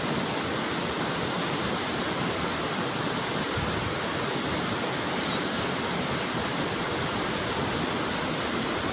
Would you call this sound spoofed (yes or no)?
no